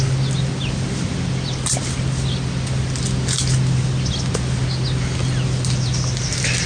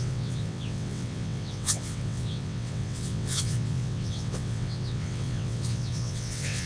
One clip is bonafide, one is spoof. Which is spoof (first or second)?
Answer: second